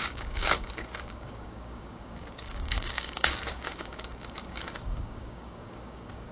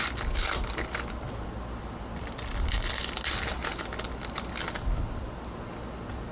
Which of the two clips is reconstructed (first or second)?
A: first